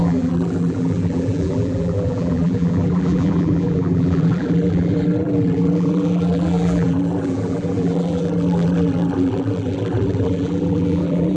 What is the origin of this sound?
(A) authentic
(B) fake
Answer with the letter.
B